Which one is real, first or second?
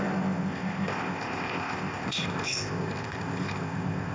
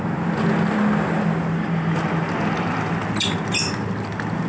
second